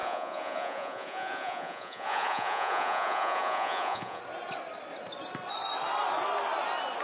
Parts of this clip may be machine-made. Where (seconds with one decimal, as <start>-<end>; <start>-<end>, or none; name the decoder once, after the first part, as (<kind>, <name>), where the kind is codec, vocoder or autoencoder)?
0.0-4.2 (vocoder, Vocos)